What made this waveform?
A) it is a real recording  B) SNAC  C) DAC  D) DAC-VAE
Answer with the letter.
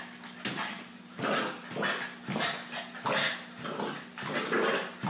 A